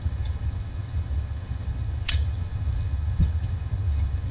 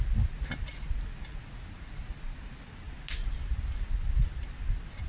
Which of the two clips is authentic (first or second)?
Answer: second